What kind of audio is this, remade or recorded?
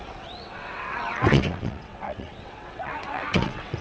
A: remade